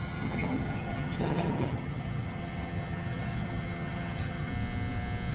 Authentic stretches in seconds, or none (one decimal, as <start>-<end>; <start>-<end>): 4.5-5.3